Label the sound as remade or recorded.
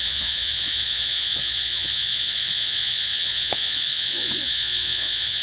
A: remade